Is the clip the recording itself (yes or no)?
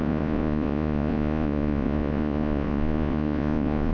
no